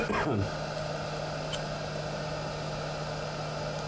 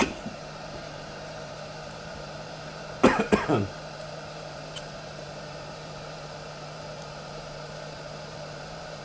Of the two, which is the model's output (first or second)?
second